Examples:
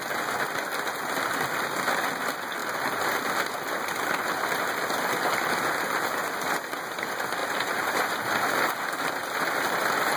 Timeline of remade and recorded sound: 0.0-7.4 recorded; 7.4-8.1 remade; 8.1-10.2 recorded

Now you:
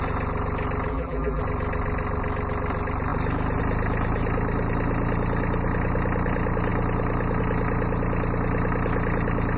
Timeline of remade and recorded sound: 0.0-0.9 recorded; 0.9-1.4 remade; 1.4-9.6 recorded

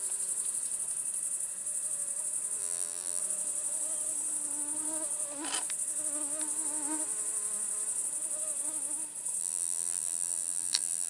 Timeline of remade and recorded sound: 0.0-2.6 recorded; 2.6-3.2 remade; 3.2-9.4 recorded; 9.4-11.1 remade

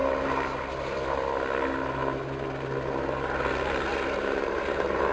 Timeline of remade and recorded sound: 0.0-0.7 recorded; 0.7-2.0 remade; 2.0-5.1 recorded

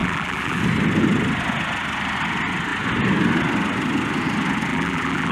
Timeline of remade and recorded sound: 0.0-0.6 remade; 0.6-4.7 recorded; 4.7-5.3 remade